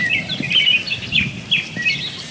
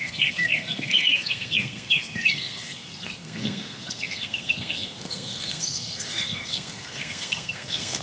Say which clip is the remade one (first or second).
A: second